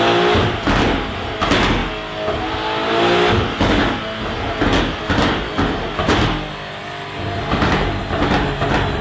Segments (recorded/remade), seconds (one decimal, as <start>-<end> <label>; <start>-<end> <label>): 0.0-9.0 recorded

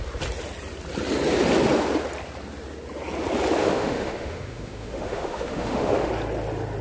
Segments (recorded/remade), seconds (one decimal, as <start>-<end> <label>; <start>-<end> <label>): 0.0-3.6 recorded; 3.6-6.1 remade; 6.1-6.8 recorded

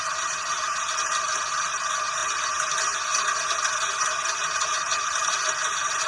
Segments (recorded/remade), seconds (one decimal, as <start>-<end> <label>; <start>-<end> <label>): 0.0-6.1 recorded

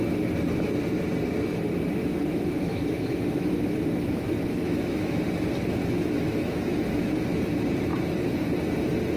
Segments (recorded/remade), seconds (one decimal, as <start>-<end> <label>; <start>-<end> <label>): 0.0-2.0 recorded; 2.0-5.2 remade; 5.2-5.8 recorded; 5.8-7.2 remade; 7.2-9.2 recorded

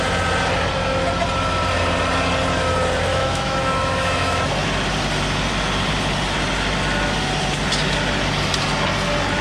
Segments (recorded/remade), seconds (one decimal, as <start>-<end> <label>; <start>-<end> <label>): 0.0-3.1 recorded; 3.1-4.4 remade; 4.4-9.4 recorded

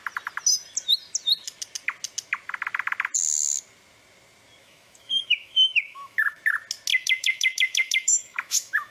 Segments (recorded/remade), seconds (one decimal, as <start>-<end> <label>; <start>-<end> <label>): 0.0-4.6 recorded; 4.6-6.4 remade; 6.4-6.9 recorded; 6.9-8.9 remade